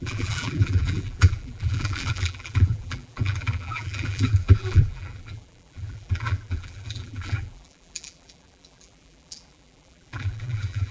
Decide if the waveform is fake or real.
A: fake